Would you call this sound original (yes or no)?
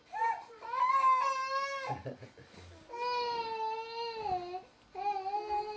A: yes